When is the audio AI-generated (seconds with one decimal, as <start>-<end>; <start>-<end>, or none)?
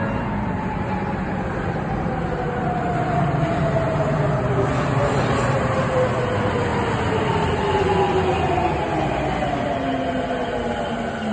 none